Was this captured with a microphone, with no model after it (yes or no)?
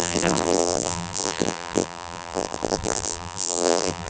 no